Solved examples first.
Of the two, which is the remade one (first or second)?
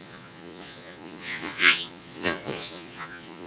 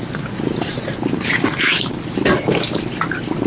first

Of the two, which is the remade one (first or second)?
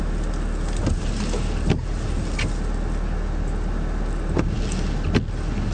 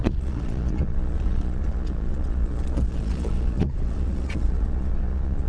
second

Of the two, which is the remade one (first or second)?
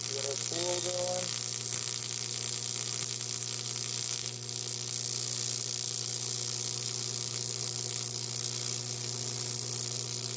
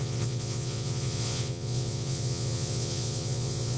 second